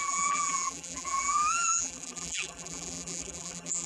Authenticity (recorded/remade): remade